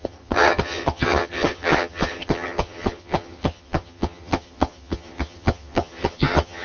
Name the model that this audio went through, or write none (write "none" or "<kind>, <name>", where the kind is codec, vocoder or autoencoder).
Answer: vocoder, HiFi-GAN